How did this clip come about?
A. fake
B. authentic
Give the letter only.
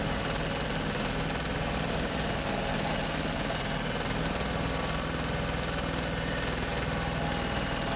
B